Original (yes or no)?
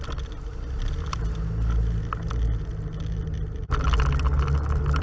yes